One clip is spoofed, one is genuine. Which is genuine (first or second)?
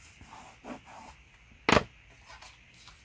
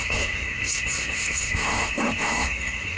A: first